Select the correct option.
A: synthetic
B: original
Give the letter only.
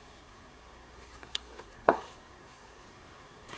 A